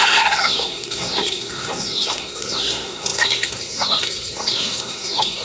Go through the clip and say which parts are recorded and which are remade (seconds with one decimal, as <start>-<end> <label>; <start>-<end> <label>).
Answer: 0.0-5.4 remade